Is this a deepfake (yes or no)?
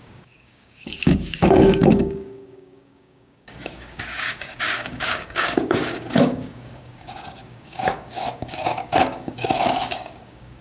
yes